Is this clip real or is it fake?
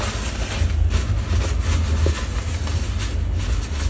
real